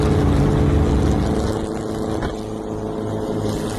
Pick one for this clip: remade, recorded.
recorded